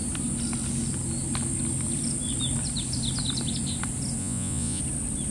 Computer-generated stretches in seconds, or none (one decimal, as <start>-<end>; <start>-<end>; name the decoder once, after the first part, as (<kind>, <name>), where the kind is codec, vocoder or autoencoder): 4.2-4.8 (vocoder, Vocos)